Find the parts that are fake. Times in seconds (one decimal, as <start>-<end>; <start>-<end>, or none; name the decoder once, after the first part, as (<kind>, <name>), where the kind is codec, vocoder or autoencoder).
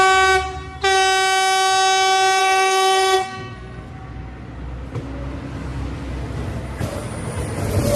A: 2.4-3.9 (codec, SNAC)